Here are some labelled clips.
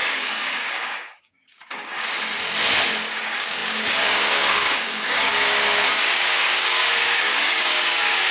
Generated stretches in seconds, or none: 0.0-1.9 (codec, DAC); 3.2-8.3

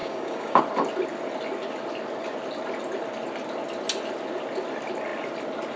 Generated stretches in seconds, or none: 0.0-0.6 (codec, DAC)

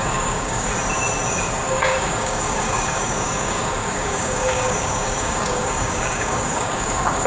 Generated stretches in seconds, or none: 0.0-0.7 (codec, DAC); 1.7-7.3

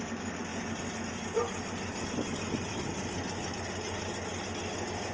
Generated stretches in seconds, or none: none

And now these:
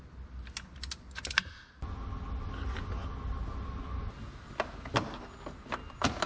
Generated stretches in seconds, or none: none

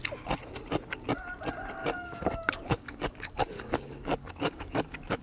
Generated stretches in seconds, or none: 1.8-5.2 (codec, DAC)

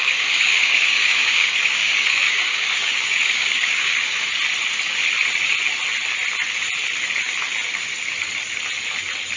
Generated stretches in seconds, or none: 0.0-4.1 (codec, DAC)